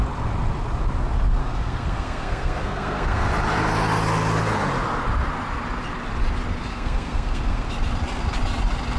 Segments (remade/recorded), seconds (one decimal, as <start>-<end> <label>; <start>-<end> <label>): 0.0-1.4 recorded; 1.4-3.3 remade; 3.3-6.7 recorded; 6.7-7.7 remade; 7.7-9.0 recorded